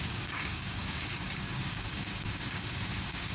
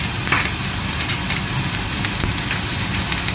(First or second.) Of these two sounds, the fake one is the first